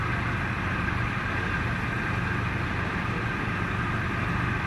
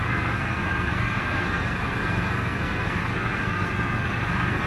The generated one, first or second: second